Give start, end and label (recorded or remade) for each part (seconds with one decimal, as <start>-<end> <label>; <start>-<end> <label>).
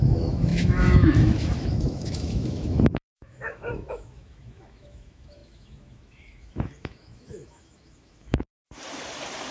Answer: 0.0-8.5 remade; 8.5-9.5 recorded